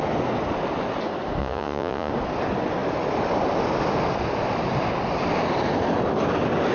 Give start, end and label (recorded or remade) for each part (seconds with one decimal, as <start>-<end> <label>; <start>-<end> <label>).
0.0-1.4 recorded; 1.4-2.1 remade; 2.1-6.7 recorded